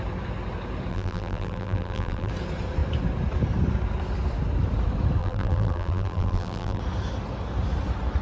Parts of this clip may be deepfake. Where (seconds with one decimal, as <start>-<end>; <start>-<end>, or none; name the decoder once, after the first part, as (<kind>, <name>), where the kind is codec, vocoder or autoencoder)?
0.9-2.3 (vocoder, BigVGAN v2); 5.2-6.8